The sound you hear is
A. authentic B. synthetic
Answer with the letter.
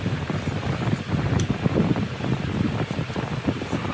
A